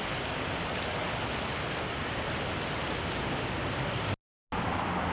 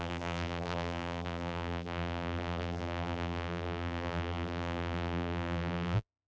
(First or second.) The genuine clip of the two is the first